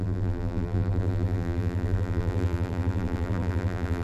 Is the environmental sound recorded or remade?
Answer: remade